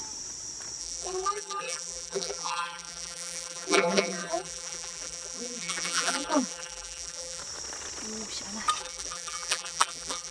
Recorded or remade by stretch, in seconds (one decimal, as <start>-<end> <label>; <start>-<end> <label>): 0.0-0.8 recorded; 0.8-7.4 remade; 7.4-8.8 recorded; 8.8-10.3 remade